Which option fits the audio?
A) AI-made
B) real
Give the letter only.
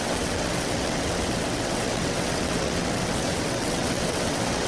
A